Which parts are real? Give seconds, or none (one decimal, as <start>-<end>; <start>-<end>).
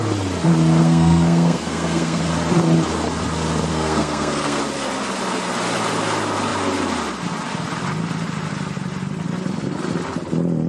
0.0-0.8; 2.2-3.7; 4.6-10.7